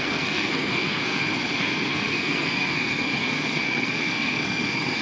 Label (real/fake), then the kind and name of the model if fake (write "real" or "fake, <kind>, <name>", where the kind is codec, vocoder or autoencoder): fake, codec, SNAC